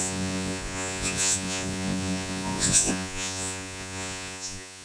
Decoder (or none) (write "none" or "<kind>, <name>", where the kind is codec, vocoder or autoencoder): vocoder, Vocos